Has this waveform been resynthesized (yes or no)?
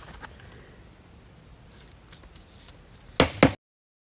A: no